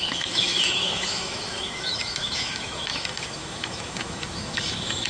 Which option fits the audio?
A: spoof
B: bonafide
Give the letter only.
A